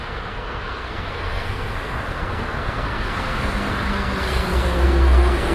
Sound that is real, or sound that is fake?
fake